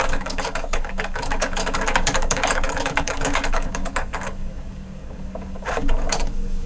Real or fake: fake